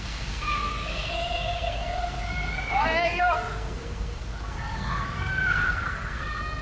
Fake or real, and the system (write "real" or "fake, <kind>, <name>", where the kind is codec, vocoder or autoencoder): fake, codec, SNAC